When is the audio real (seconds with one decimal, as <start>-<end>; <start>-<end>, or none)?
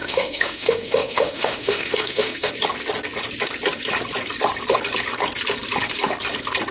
2.5-6.7